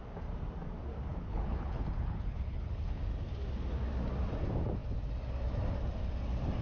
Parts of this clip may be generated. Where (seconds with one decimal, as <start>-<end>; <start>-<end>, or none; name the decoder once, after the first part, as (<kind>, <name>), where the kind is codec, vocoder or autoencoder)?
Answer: 1.1-3.0 (codec, HILCodec)